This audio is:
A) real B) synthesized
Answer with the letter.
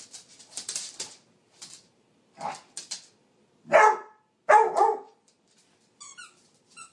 A